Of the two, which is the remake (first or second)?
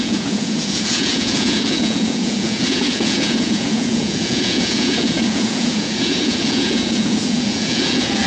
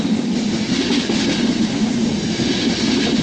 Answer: first